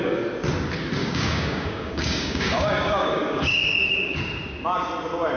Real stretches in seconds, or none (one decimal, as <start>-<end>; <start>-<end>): 0.0-1.0; 4.2-5.4